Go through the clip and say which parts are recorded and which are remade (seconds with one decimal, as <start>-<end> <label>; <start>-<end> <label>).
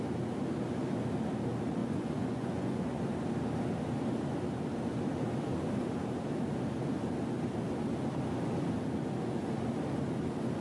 0.0-1.8 recorded; 1.8-3.0 remade; 3.0-10.6 recorded